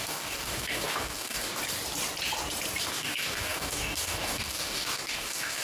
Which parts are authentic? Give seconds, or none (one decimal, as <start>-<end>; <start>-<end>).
1.6-2.8